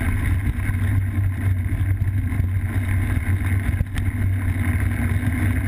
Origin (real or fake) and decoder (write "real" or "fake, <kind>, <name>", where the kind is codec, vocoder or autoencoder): real